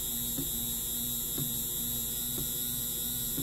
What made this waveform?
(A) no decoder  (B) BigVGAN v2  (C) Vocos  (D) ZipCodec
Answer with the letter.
A